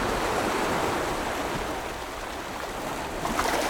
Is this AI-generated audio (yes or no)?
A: no